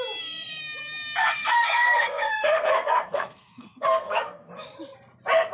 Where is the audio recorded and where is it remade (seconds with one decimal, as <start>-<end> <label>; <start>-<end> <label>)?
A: 0.0-1.2 recorded; 1.2-4.5 remade; 4.5-5.5 recorded